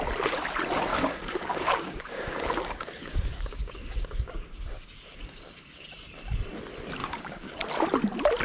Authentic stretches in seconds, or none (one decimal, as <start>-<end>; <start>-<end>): 0.0-0.9; 5.9-7.0; 7.6-8.4